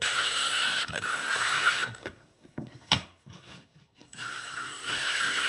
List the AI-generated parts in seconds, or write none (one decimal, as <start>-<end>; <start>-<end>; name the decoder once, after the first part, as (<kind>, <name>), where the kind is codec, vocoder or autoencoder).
0.0-5.5 (codec, SNAC)